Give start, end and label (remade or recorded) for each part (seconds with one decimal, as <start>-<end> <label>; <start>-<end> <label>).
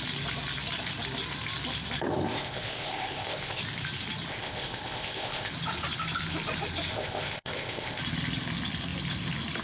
0.0-2.1 recorded; 2.1-3.6 remade; 3.6-4.3 recorded; 4.3-5.5 remade; 5.5-6.9 recorded; 6.9-8.0 remade; 8.0-9.6 recorded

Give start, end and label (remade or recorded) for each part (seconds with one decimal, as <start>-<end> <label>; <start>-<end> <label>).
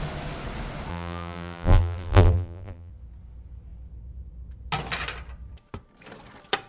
0.0-0.9 recorded; 0.9-2.9 remade; 2.9-6.7 recorded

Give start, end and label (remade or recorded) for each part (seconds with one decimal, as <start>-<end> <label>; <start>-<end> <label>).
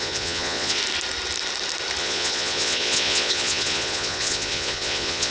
0.0-0.8 remade; 0.8-2.0 recorded; 2.0-5.3 remade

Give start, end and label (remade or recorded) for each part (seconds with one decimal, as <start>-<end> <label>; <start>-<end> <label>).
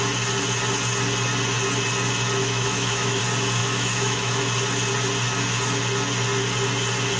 0.0-2.4 recorded; 2.4-3.2 remade; 3.2-3.6 recorded; 3.6-4.4 remade; 4.4-7.2 recorded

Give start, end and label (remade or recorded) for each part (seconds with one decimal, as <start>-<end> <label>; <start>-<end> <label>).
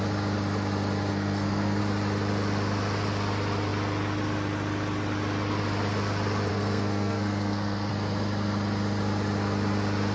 0.0-1.1 recorded; 1.1-1.8 remade; 1.8-6.5 recorded; 6.5-7.9 remade; 7.9-10.1 recorded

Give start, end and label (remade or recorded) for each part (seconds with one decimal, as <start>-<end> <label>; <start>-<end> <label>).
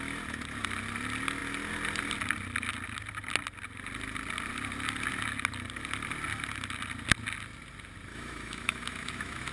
0.0-8.1 recorded; 8.1-9.5 remade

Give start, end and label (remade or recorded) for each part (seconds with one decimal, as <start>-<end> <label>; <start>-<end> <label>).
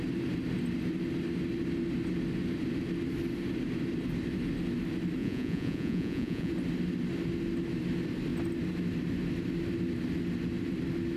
0.0-5.2 recorded; 5.2-6.5 remade; 6.5-11.2 recorded